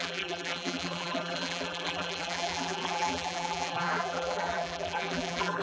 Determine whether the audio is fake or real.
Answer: fake